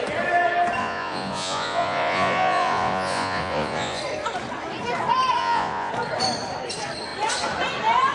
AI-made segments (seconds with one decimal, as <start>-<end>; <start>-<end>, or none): 0.8-4.0; 5.4-5.9